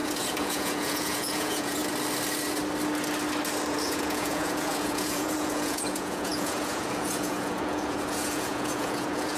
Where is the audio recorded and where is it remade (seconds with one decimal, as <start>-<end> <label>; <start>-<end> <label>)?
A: 0.0-1.8 remade; 1.8-3.7 recorded; 3.7-9.4 remade